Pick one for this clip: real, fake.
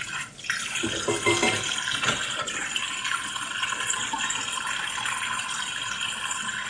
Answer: real